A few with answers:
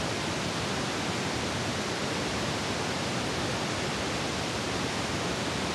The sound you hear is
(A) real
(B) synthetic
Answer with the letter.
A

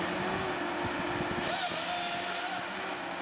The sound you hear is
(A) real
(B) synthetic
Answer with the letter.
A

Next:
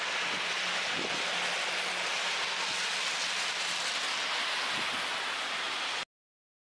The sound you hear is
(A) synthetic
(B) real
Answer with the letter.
B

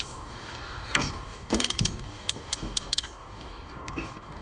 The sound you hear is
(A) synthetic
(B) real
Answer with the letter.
A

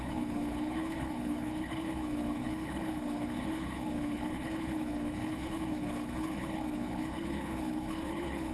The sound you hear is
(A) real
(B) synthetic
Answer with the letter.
B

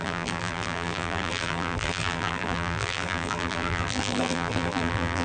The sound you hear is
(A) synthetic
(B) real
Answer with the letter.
A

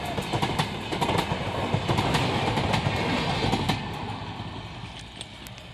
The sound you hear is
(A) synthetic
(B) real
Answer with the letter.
B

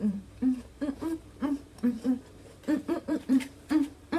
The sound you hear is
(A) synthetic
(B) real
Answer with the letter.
A